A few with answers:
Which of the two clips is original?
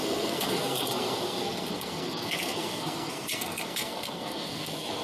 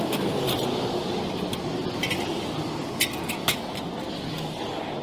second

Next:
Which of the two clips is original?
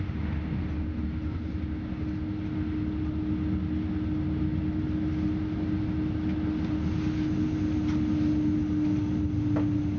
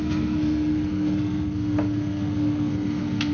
first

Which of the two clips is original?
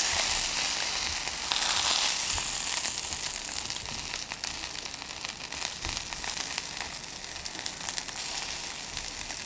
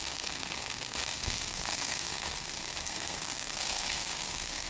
first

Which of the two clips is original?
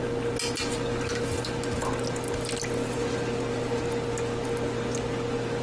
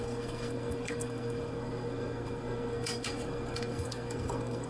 first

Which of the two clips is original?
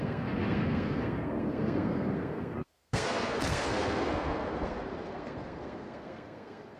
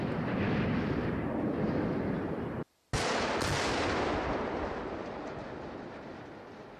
second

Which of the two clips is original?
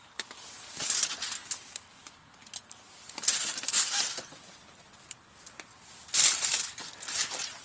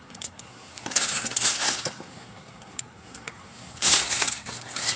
first